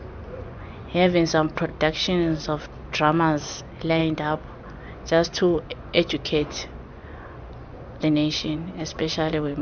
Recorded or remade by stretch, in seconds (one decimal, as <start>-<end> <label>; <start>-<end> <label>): 0.0-1.7 remade; 1.7-3.6 recorded; 3.6-4.0 remade; 4.0-4.5 recorded; 4.5-9.6 remade